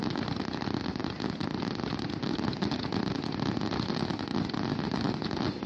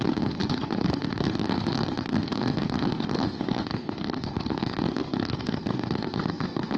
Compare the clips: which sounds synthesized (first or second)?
second